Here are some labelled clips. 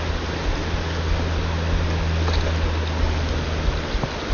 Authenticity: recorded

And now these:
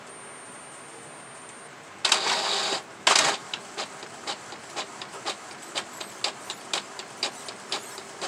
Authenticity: recorded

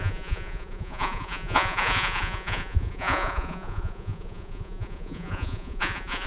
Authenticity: remade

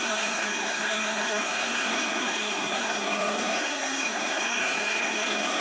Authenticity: remade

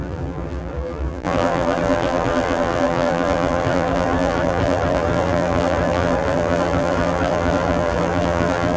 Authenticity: remade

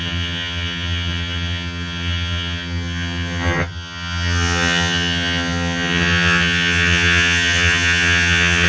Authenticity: remade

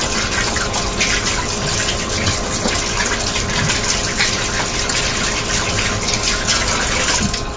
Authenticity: recorded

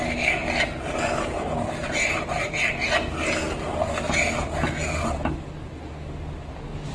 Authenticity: recorded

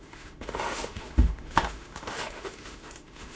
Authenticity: remade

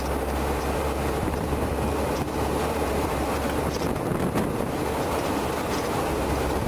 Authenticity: remade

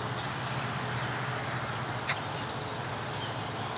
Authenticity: recorded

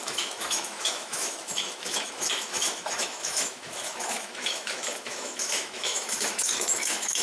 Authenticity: remade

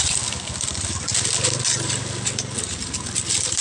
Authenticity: recorded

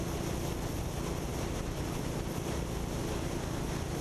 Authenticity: recorded